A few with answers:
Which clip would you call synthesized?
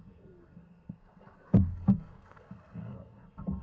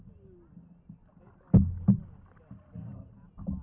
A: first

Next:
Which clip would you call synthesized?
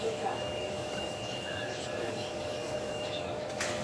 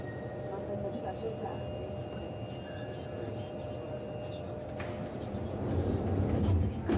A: first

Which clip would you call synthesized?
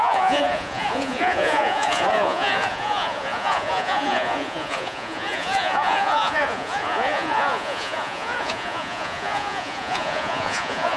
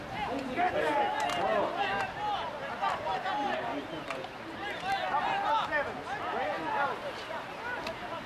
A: first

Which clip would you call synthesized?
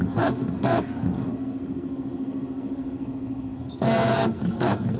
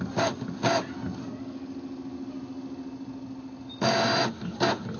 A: first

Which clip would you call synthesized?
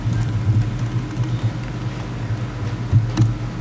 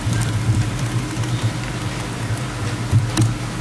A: second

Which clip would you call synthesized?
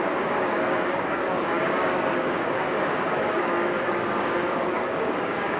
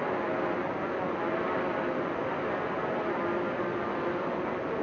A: first